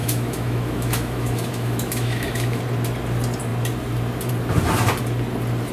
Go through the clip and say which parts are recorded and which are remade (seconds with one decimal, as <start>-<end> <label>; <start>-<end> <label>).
0.0-2.6 remade; 2.6-5.7 recorded